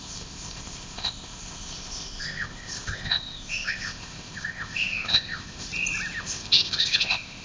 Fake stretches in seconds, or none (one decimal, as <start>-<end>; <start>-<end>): 0.0-5.7; 6.2-7.4